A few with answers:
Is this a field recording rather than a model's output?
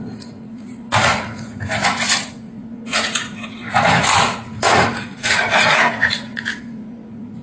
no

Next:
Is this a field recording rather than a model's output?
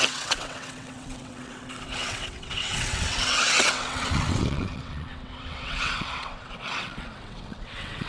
no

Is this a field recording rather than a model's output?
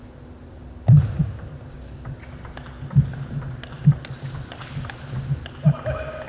yes